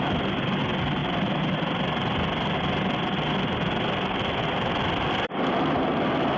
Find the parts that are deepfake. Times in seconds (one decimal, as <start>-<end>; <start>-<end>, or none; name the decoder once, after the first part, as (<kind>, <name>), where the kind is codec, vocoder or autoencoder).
0.0-6.4 (vocoder, BigVGAN v2)